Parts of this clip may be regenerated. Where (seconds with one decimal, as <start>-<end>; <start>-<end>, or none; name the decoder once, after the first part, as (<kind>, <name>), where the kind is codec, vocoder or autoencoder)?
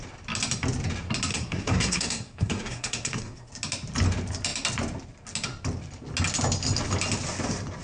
1.3-3.5 (codec, SNAC)